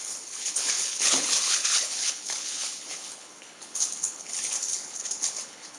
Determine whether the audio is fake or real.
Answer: fake